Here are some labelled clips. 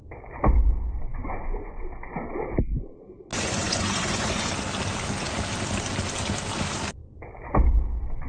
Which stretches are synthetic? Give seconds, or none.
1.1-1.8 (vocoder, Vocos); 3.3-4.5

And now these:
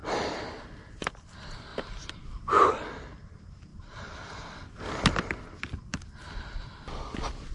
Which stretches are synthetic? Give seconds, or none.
0.0-1.1 (vocoder, BigVGAN v2); 1.7-2.7; 3.7-4.9

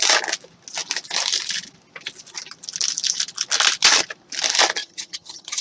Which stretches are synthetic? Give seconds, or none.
4.8-5.6 (vocoder, HiFi-GAN)